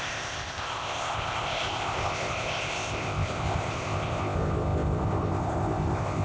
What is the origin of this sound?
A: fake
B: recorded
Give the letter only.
A